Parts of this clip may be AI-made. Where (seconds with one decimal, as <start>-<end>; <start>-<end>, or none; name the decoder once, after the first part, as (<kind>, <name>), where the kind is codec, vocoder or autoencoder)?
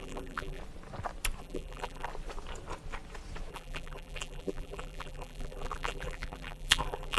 0.0-0.6 (vocoder, BigVGAN v2); 1.4-2.1; 3.5-7.2